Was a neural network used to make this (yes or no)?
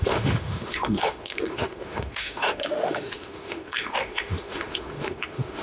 yes